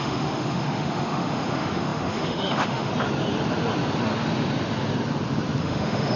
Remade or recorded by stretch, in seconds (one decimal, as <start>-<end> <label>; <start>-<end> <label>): 0.0-2.9 remade; 2.9-5.6 recorded; 5.6-6.2 remade